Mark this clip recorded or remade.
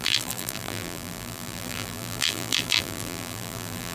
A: remade